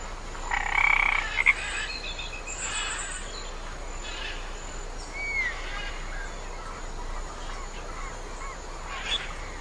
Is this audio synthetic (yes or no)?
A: no